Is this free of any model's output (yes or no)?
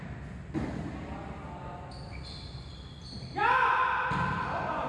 yes